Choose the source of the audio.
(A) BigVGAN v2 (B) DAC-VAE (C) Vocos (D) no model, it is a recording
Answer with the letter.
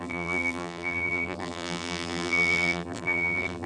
A